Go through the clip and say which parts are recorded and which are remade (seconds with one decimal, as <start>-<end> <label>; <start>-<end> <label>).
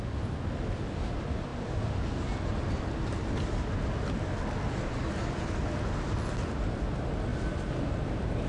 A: 0.0-8.5 recorded